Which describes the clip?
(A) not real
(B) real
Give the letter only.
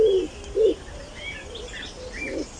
B